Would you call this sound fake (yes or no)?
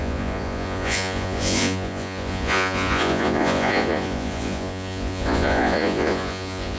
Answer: yes